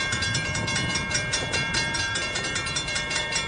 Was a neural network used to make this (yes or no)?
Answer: yes